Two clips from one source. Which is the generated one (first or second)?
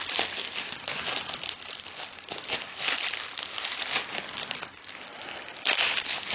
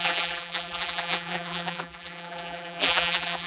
second